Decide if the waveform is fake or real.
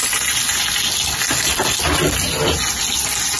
real